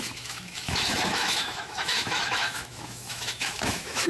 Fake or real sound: fake